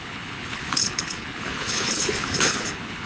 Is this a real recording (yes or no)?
no